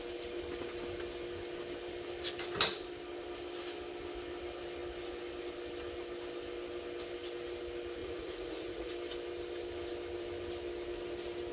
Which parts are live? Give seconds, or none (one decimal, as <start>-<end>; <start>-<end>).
0.0-8.0; 8.9-11.5